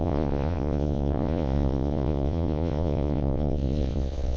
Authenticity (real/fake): fake